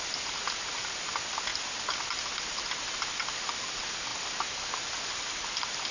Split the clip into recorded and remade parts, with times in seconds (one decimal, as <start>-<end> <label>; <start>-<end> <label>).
0.0-4.1 recorded; 4.1-5.9 remade